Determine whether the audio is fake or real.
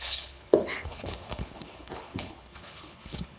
fake